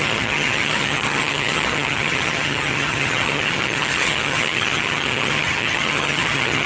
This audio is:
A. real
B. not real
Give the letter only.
B